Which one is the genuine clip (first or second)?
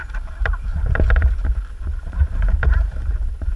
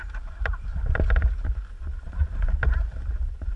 second